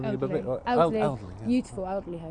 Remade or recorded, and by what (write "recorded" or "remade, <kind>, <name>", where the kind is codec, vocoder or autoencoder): recorded